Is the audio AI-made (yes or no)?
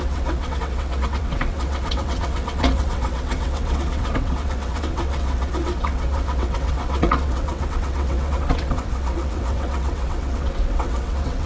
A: yes